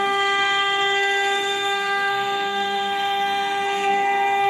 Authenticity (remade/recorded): remade